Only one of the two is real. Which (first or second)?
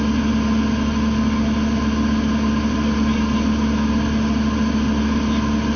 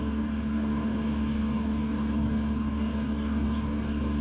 first